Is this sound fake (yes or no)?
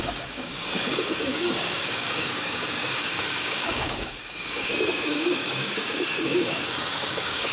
yes